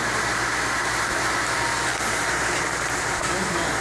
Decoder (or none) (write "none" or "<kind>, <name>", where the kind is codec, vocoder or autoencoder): none